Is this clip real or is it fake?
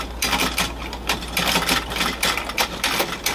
real